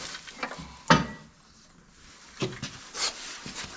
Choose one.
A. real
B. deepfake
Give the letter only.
A